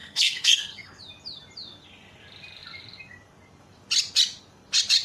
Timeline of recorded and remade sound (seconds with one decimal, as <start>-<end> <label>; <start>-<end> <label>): 0.0-1.0 remade; 1.0-5.0 recorded